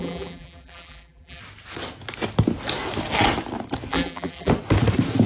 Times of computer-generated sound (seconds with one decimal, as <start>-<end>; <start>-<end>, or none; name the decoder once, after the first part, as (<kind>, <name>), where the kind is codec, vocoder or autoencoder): 0.0-1.4 (vocoder, BigVGAN v2); 3.9-4.5